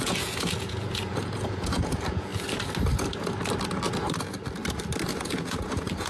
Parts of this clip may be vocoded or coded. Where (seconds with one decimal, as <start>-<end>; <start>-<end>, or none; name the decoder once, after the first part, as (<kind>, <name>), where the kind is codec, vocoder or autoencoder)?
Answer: 0.0-2.3 (vocoder, Vocos); 5.1-6.1